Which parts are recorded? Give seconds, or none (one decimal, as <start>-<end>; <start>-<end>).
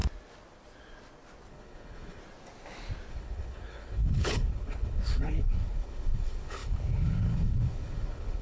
0.0-1.5; 2.2-3.1